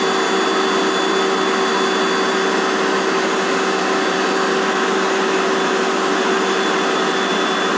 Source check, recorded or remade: recorded